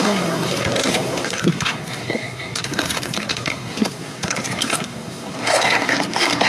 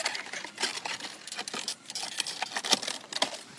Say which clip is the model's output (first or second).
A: first